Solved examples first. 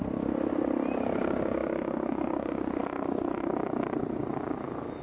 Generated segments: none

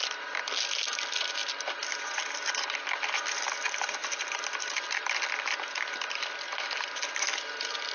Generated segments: 1.4-2.2 (vocoder, BigVGAN v2); 4.0-6.6

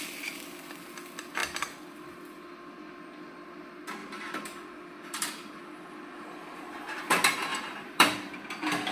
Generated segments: 1.4-2.5 (vocoder, BigVGAN v2); 4.0-7.0; 7.5-8.9

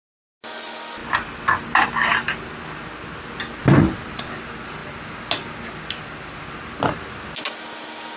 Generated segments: 1.0-2.4 (vocoder, BigVGAN v2); 3.6-4.2